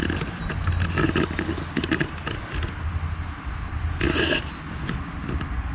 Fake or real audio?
real